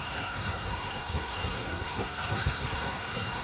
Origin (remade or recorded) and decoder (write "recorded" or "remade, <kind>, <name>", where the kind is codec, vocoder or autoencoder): remade, codec, SNAC